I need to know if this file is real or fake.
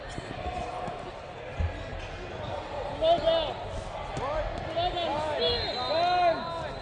real